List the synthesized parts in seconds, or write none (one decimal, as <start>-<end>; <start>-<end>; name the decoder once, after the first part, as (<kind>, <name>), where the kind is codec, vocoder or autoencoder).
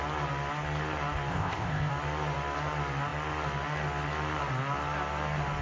1.3-1.9 (codec, ZipCodec)